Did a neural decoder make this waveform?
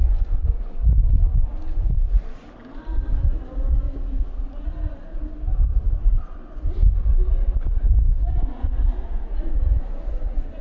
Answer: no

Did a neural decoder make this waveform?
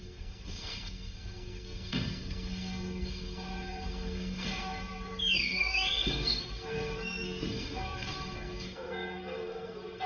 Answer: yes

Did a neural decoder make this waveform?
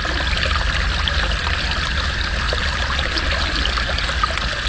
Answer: no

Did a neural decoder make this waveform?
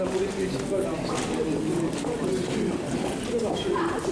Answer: no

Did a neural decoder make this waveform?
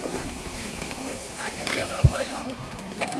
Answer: yes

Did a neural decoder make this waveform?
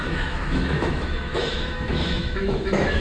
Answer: yes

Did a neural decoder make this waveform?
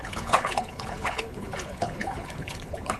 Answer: yes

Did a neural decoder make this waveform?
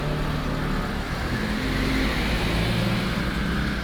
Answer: no